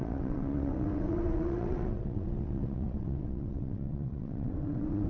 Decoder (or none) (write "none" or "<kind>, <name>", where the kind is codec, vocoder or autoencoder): vocoder, WaveNeXt